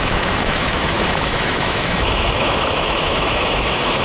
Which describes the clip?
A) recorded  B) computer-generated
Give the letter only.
B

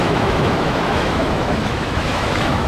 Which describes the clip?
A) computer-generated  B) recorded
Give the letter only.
A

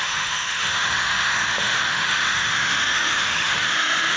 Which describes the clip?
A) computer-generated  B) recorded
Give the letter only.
A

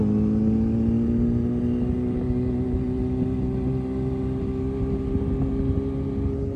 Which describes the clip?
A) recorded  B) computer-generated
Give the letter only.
A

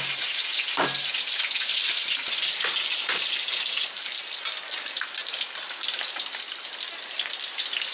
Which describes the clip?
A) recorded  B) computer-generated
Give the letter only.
A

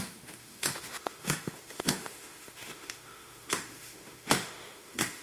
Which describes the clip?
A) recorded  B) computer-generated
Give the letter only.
B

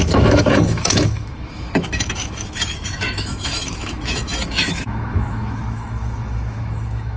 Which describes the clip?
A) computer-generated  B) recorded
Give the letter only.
A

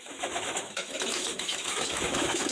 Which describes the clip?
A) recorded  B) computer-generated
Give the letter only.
B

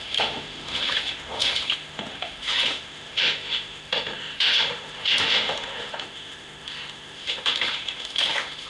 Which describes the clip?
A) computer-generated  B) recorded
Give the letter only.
A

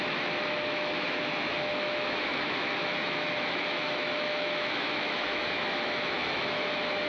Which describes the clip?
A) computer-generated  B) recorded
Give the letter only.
A